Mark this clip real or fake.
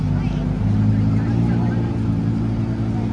real